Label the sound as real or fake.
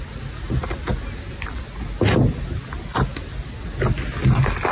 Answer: real